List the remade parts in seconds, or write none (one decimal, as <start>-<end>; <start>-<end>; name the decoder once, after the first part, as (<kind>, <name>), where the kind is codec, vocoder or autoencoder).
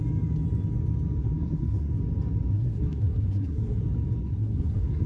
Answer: 1.2-1.9 (codec, SNAC); 2.5-3.8; 4.2-5.1